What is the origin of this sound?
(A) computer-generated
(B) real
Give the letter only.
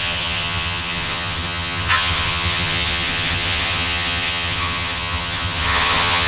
A